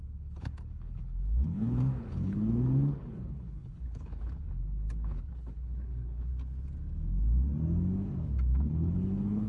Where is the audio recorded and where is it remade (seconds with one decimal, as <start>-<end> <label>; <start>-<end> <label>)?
0.0-6.3 remade; 6.3-8.6 recorded; 8.6-9.5 remade